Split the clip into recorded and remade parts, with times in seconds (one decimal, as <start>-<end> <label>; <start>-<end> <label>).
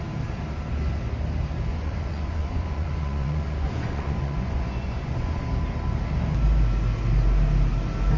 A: 0.0-1.7 recorded; 1.7-5.5 remade; 5.5-8.2 recorded